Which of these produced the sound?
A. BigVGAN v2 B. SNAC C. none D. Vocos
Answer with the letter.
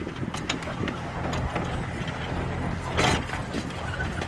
C